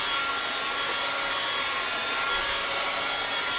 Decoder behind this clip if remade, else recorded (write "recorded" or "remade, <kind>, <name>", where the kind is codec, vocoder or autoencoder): recorded